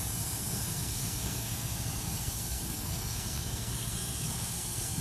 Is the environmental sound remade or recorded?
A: remade